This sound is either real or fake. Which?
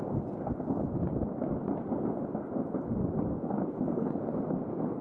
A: real